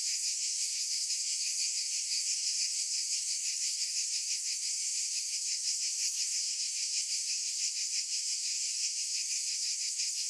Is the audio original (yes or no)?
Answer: no